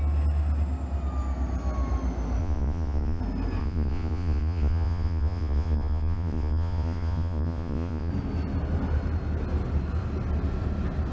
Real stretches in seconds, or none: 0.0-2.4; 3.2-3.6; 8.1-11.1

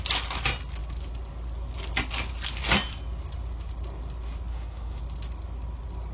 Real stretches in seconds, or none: 0.0-4.5; 5.0-6.1

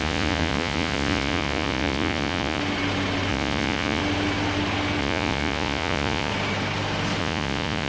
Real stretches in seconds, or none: 2.6-3.3; 4.0-5.0; 6.3-7.2

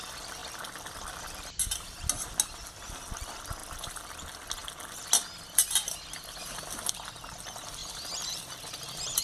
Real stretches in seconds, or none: 0.0-3.6; 4.1-4.6; 6.6-7.8